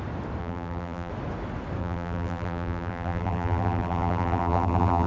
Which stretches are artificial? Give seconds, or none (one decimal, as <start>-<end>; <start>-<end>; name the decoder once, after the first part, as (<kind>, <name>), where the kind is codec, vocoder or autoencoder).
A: 0.4-1.1 (vocoder, BigVGAN v2); 1.8-5.1